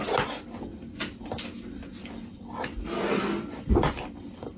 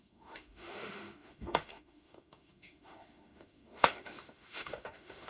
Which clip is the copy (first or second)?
second